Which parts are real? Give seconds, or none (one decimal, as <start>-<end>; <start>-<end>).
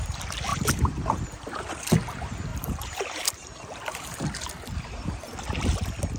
0.0-0.5; 1.8-2.5; 4.0-6.2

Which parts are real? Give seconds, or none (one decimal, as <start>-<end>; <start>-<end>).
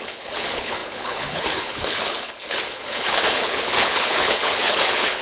none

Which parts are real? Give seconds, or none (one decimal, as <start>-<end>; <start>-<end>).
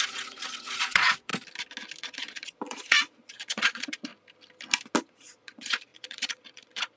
1.3-2.0; 4.1-5.0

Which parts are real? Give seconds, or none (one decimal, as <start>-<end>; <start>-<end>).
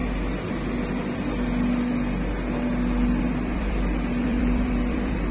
0.0-3.2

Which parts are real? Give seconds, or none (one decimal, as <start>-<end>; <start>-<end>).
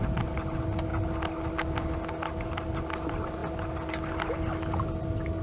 0.0-5.4